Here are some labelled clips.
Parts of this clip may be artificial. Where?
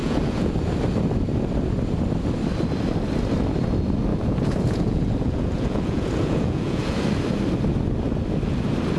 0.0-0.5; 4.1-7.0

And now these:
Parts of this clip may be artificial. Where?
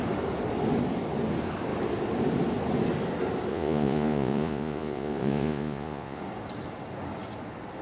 3.5-6.2